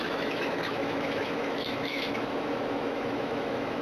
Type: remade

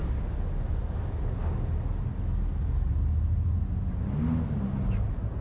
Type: recorded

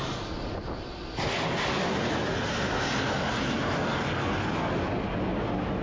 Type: recorded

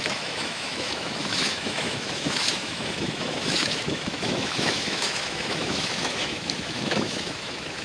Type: remade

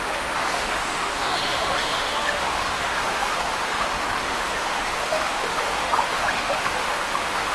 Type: remade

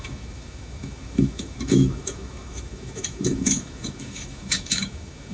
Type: remade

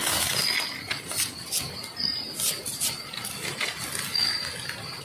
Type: recorded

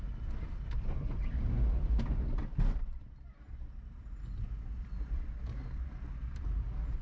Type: recorded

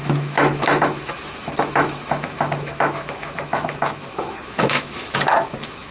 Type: remade